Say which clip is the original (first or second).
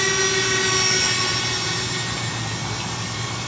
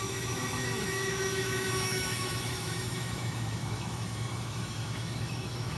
first